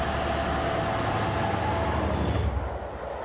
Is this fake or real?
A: real